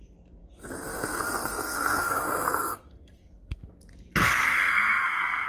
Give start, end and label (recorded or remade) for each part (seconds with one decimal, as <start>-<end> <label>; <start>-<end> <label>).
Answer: 0.0-0.4 recorded; 0.4-3.7 remade; 3.7-4.2 recorded; 4.2-5.5 remade